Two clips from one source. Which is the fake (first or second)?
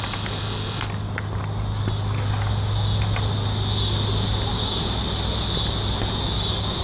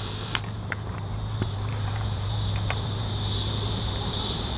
second